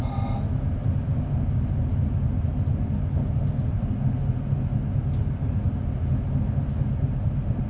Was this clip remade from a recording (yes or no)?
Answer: no